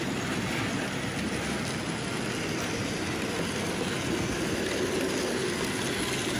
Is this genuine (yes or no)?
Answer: yes